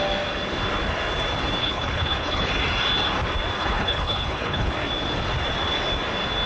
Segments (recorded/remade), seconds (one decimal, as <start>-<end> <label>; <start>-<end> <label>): 0.0-1.6 recorded; 1.6-2.5 remade; 2.5-3.6 recorded; 3.6-4.7 remade; 4.7-6.5 recorded